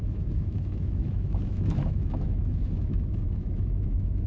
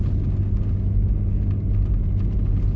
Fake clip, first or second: first